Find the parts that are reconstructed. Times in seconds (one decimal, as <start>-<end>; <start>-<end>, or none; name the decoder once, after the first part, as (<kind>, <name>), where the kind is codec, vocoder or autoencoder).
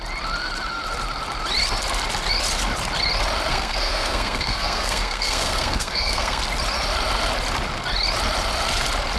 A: 3.5-6.4 (codec, SNAC)